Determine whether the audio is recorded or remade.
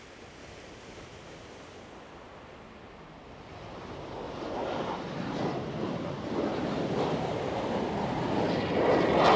recorded